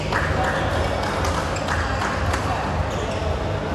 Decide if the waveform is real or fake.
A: real